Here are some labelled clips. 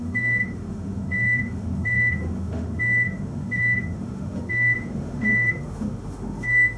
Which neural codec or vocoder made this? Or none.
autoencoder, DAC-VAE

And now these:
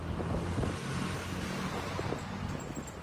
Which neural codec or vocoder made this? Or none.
none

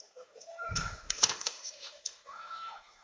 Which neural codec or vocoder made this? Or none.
autoencoder, DAC-VAE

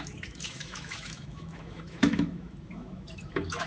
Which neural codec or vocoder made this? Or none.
autoencoder, DAC-VAE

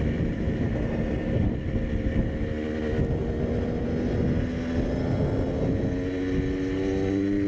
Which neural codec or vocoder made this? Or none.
none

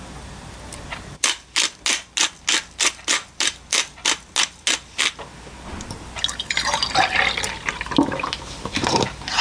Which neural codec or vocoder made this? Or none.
none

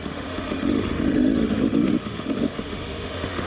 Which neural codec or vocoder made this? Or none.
autoencoder, DAC-VAE